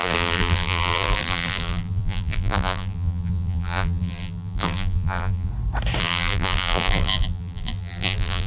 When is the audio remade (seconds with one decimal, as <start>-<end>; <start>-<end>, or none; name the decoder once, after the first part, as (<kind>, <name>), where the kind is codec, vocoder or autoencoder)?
0.0-5.5 (vocoder, BigVGAN v2); 6.0-8.5